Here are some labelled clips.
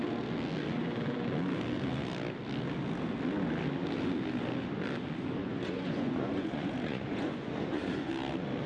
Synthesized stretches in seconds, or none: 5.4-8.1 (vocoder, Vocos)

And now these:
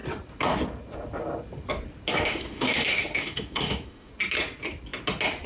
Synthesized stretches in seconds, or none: 2.1-4.1 (autoencoder, DAC-VAE)

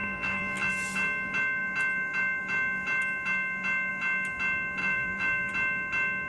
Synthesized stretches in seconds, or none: 0.0-0.7 (vocoder, BigVGAN v2); 4.8-5.5

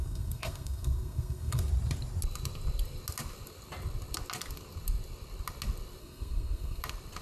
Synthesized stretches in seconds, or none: 0.0-1.6 (codec, SNAC); 6.0-6.8

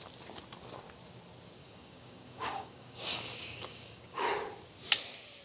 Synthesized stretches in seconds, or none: 1.6-4.3 (codec, DAC)